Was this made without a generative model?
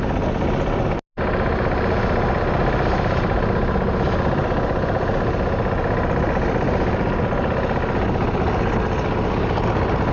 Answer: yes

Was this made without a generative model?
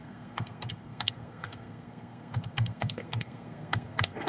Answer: no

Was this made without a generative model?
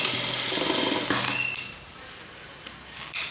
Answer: yes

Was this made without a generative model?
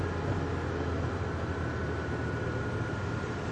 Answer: yes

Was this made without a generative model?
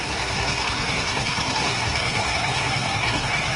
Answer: no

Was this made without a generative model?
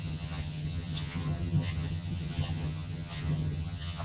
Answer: no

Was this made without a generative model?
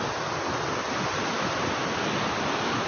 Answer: yes